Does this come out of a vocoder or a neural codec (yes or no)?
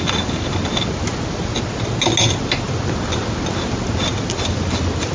no